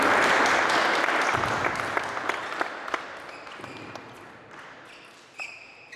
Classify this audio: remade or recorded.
recorded